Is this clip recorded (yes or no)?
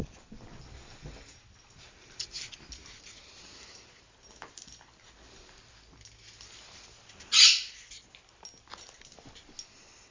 yes